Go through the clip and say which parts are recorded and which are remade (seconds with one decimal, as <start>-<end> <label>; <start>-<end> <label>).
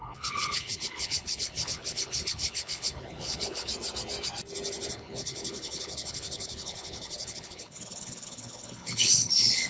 0.0-3.7 remade; 3.7-4.9 recorded; 4.9-9.7 remade